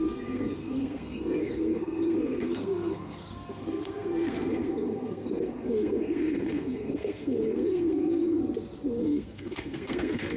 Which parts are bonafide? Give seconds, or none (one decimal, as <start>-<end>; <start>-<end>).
8.4-9.0